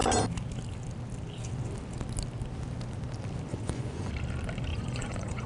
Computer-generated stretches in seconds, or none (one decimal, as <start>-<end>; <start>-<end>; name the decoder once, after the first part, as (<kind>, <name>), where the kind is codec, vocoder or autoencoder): 3.5-4.1 (vocoder, Vocos); 4.7-5.5

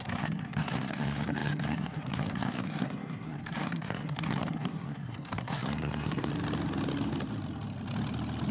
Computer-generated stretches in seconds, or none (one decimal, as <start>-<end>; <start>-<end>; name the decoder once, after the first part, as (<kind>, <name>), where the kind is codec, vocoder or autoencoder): 0.0-6.3 (codec, SNAC)